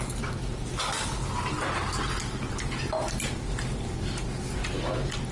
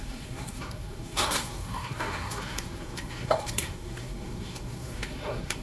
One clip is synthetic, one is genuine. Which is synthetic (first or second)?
second